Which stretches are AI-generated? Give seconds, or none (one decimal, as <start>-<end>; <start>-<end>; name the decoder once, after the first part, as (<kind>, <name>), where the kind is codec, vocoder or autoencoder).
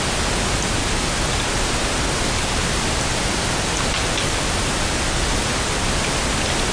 none